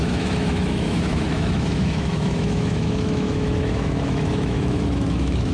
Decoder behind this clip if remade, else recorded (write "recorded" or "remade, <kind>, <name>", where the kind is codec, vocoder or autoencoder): remade, autoencoder, DAC-VAE